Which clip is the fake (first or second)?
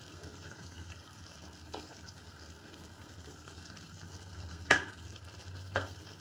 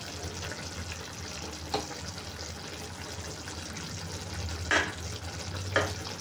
first